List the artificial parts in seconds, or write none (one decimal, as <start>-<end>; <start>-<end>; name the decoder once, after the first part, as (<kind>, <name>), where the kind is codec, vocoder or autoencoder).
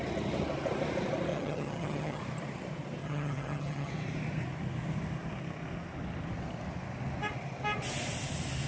1.3-2.2 (vocoder, HiFi-GAN); 3.0-3.9